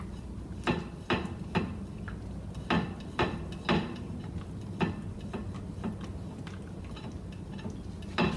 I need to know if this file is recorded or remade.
recorded